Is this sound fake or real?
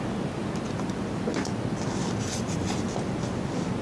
real